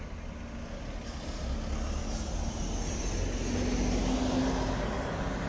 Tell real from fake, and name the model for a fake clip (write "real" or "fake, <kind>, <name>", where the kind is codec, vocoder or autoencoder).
real